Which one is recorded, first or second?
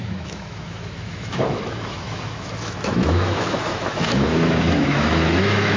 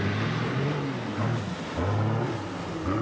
second